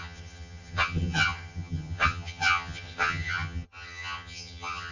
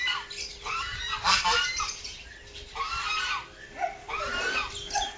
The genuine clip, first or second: second